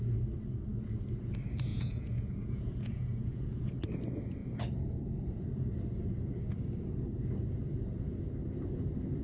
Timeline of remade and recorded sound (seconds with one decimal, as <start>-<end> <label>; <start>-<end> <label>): 0.0-1.7 recorded; 1.7-3.7 remade; 3.7-9.2 recorded